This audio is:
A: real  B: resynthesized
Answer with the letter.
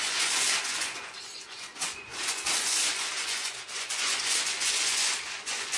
B